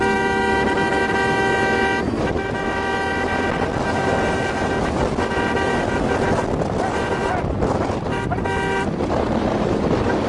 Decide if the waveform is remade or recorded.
recorded